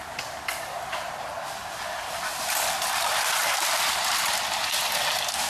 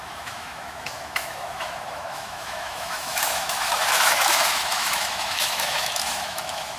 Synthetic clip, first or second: second